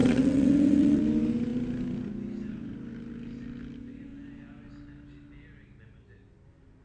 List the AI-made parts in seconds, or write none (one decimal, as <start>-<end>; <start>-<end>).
0.0-1.0